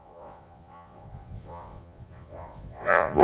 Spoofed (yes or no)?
yes